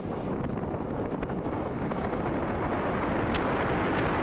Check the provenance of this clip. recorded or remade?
recorded